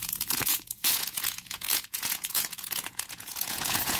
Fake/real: fake